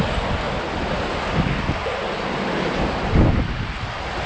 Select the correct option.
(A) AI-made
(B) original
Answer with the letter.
B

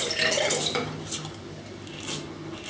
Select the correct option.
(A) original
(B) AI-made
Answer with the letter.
A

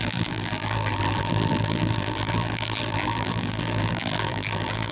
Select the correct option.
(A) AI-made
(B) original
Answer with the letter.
A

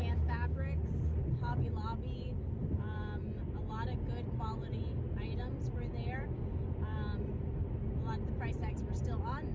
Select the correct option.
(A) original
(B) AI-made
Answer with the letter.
A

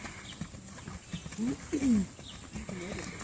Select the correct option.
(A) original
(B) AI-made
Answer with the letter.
A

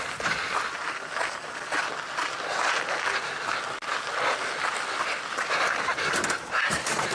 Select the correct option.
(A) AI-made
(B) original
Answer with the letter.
B